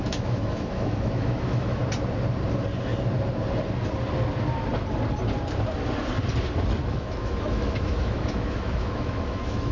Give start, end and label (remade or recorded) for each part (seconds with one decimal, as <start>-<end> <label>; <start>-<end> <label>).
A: 0.0-1.8 remade; 1.8-6.9 recorded; 6.9-9.7 remade